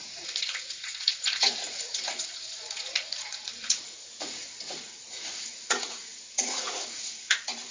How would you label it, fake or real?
fake